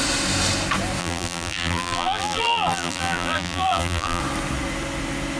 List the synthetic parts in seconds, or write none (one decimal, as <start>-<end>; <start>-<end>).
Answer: 1.0-4.2